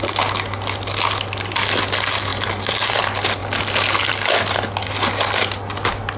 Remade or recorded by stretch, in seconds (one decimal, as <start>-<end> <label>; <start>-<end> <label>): 0.0-2.3 recorded; 2.3-3.0 remade; 3.0-6.2 recorded